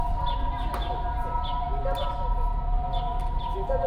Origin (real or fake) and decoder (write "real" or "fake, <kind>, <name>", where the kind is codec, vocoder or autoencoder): real